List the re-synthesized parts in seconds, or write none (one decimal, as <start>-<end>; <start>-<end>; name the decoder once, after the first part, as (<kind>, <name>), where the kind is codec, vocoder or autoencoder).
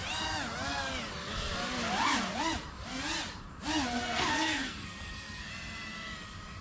4.0-5.5 (codec, SNAC)